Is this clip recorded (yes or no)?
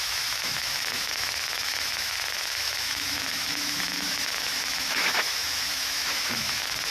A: no